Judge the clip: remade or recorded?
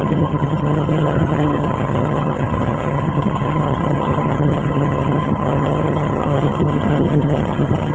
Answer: remade